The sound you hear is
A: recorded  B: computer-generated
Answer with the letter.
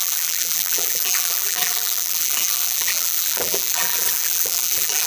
B